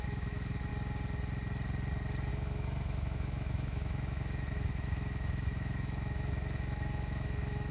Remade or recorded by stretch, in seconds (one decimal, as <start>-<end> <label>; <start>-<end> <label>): 0.0-0.7 remade; 0.7-2.3 recorded; 2.3-7.7 remade